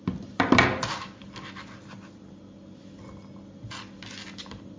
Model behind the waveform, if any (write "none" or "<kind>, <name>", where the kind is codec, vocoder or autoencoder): none